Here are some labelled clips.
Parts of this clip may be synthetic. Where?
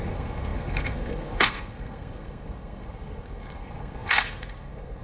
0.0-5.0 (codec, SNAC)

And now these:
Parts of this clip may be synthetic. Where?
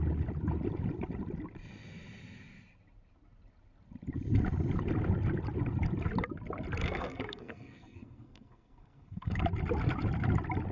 6.8-9.4 (codec, SNAC)